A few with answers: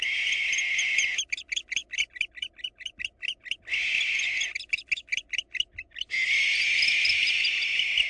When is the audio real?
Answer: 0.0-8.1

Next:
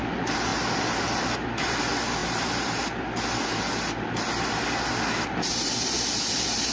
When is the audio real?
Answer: 0.0-6.7